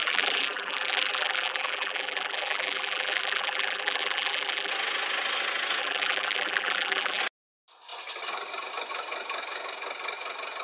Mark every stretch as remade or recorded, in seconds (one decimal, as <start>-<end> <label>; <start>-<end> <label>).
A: 0.0-4.7 remade; 4.7-5.8 recorded; 5.8-7.2 remade; 7.2-10.6 recorded